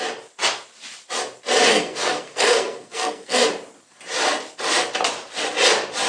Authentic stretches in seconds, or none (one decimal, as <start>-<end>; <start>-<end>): 0.0-1.7; 3.5-6.1